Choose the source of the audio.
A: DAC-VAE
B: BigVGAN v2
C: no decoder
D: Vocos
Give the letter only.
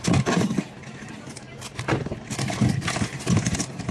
C